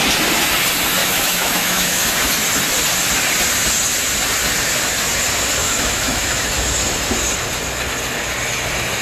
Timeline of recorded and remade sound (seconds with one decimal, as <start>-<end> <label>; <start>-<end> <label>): 0.0-1.0 recorded; 1.0-2.0 remade; 2.0-5.6 recorded; 5.6-6.5 remade; 6.5-9.0 recorded